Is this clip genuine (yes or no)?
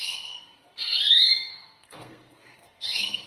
no